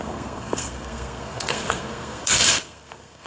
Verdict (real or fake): fake